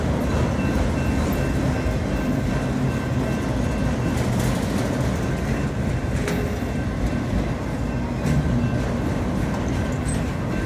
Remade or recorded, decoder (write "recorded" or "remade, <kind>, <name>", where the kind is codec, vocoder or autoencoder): recorded